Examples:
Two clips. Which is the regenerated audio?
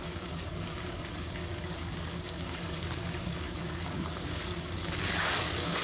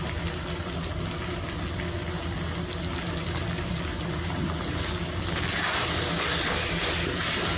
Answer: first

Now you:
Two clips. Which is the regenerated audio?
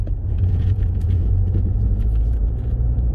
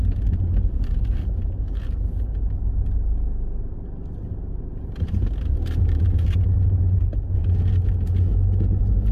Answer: first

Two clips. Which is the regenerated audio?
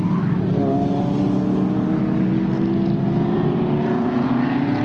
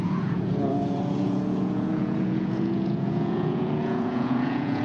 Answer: second